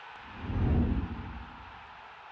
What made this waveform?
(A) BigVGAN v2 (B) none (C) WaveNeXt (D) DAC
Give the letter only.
B